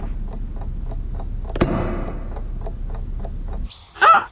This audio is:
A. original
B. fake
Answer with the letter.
A